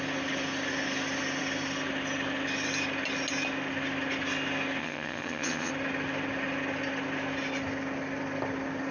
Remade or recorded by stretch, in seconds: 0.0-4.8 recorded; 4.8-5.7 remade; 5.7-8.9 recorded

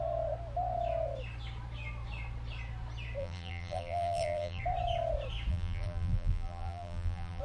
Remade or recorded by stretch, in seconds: 0.0-3.2 recorded; 3.2-4.6 remade; 4.6-5.5 recorded; 5.5-7.4 remade

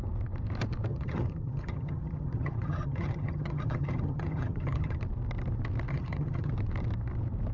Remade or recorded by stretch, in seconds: 0.0-0.9 recorded; 0.9-5.0 remade; 5.0-5.9 recorded; 5.9-6.5 remade; 6.5-7.5 recorded